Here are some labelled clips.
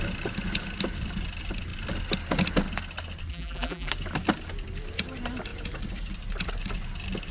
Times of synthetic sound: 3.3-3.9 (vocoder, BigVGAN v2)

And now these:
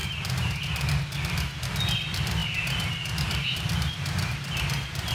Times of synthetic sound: 0.0-5.1 (vocoder, BigVGAN v2)

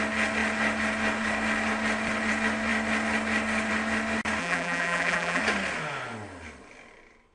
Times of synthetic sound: 4.4-5.4 (vocoder, BigVGAN v2)

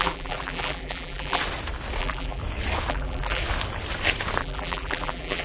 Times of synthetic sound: 0.0-1.4 (vocoder, BigVGAN v2); 2.0-2.4; 2.9-3.4; 4.4-5.4

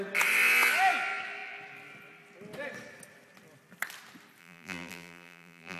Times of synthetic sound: 4.4-5.8 (vocoder, BigVGAN v2)